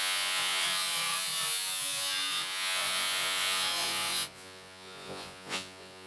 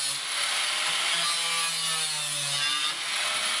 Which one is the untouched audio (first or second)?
second